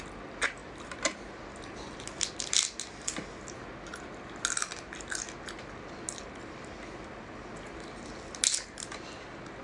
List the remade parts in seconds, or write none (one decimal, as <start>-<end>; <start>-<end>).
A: 0.6-2.4